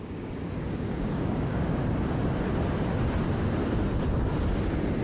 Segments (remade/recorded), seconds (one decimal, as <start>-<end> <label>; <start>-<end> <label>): 0.0-1.8 remade; 1.8-5.0 recorded